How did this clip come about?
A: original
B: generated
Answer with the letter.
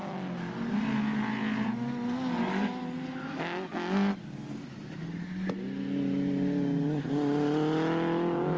A